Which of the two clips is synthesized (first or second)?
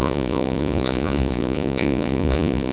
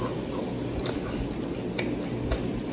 first